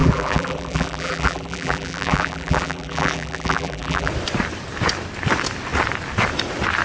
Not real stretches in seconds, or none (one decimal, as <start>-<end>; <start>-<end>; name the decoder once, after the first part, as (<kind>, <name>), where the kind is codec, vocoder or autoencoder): 0.0-4.1 (vocoder, BigVGAN v2)